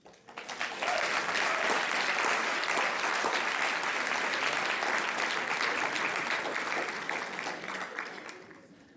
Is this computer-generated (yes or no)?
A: no